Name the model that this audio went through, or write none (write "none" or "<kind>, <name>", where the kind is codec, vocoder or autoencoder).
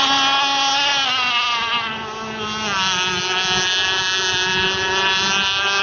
none